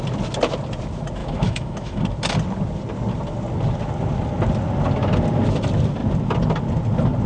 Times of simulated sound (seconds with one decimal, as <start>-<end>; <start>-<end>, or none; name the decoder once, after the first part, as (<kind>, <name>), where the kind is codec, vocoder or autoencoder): 1.2-2.0 (autoencoder, DAC-VAE)